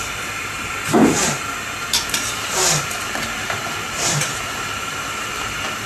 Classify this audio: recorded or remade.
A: remade